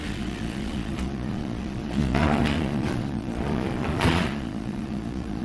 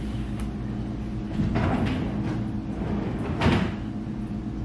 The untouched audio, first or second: second